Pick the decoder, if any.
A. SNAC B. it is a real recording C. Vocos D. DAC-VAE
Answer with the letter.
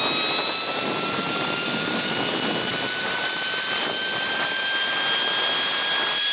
B